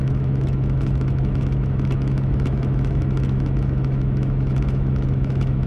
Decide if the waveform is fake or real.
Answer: fake